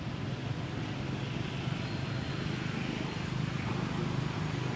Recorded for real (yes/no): yes